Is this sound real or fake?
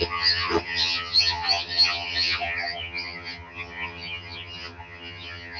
fake